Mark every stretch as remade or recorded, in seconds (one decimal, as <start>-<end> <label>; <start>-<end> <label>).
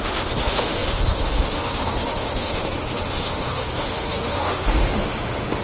0.0-5.6 remade